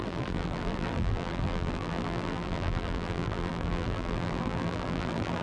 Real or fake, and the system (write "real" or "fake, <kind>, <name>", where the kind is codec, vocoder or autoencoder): fake, vocoder, BigVGAN v2